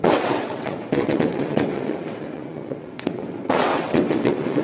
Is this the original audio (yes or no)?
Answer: no